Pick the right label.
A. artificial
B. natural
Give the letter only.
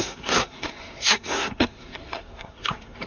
A